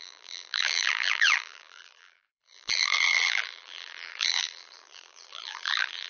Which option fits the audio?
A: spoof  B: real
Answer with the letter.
A